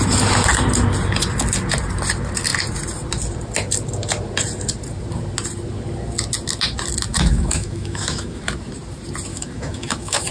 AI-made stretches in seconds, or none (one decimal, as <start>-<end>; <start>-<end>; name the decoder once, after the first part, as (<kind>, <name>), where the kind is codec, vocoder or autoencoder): 7.1-8.4 (autoencoder, DAC-VAE); 9.3-10.3